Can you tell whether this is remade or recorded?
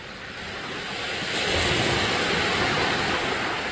recorded